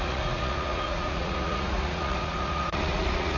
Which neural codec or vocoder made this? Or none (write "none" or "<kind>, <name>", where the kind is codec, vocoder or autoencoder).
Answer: vocoder, Vocos